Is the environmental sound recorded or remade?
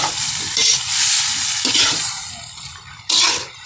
remade